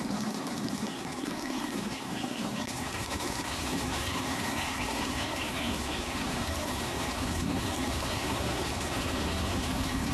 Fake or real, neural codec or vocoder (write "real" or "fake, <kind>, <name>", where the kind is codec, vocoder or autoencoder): fake, codec, SNAC